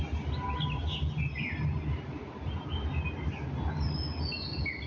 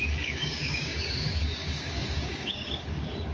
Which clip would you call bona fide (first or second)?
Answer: first